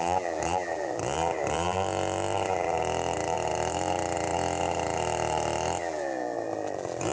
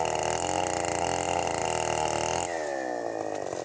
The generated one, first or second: first